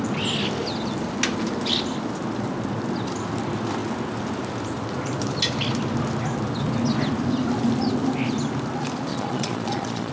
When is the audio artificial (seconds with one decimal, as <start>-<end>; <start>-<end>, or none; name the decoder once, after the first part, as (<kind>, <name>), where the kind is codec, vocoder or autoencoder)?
9.1-10.1 (vocoder, Vocos)

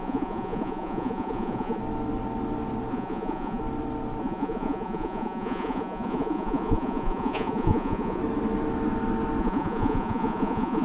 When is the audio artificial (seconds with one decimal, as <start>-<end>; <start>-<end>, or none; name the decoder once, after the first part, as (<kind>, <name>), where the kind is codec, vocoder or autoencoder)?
0.0-1.8 (vocoder, Vocos); 2.9-3.6; 4.2-8.2; 9.4-10.8